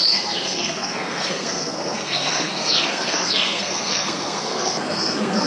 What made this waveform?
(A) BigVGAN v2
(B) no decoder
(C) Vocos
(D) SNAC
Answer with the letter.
D